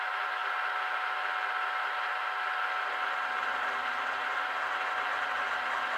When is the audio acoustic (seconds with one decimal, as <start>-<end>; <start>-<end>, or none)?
0.0-6.0